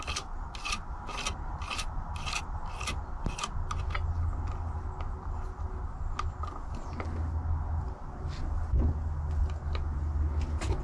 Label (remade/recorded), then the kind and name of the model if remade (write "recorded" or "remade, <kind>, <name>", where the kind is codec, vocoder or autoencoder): recorded